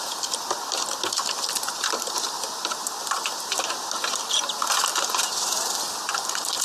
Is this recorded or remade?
recorded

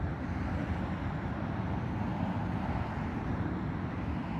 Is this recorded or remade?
recorded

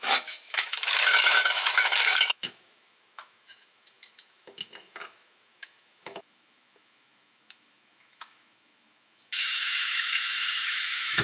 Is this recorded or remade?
remade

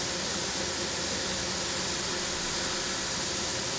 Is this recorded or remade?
recorded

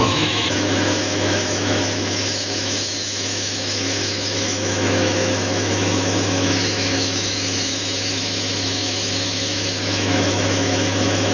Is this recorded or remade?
remade